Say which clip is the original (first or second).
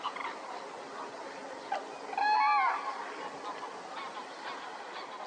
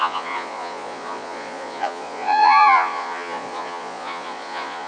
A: first